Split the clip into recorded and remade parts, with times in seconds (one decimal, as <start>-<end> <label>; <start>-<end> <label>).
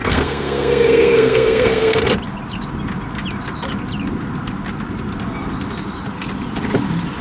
0.0-2.0 remade; 2.0-7.2 recorded